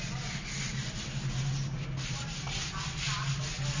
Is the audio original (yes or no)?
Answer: yes